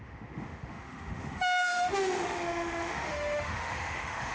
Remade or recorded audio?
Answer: remade